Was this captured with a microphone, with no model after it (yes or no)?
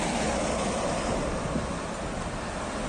yes